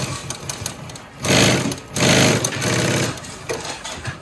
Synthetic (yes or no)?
no